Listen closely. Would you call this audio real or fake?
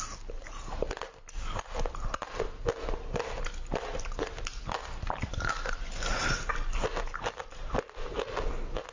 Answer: real